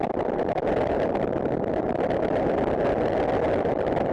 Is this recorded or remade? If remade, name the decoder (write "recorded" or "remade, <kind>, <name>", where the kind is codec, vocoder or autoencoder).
recorded